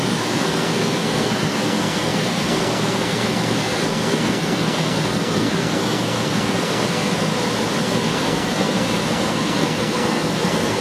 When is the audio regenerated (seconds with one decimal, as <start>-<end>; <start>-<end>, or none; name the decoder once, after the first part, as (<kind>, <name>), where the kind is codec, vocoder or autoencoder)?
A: 0.0-7.3 (codec, SNAC); 7.8-10.8

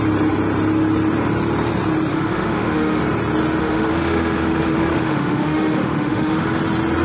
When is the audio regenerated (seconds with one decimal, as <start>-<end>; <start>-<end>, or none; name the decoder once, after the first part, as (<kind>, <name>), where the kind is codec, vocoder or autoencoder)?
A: 2.1-3.0 (autoencoder, DAC-VAE); 3.6-6.6